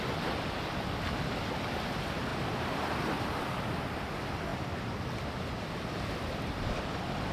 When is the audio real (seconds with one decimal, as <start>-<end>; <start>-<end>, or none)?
0.0-2.3; 3.8-7.3